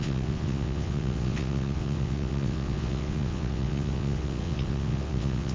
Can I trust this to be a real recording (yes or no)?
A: no